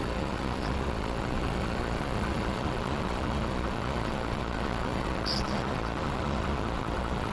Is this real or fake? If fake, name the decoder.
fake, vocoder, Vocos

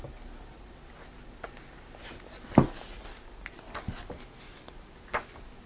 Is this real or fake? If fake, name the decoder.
real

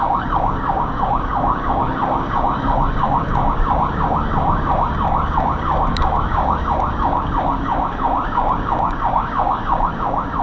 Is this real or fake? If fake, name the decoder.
fake, codec, DAC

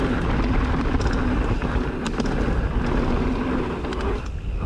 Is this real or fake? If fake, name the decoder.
real